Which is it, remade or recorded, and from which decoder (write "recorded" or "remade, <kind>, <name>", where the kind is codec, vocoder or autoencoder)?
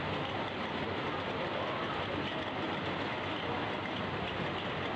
recorded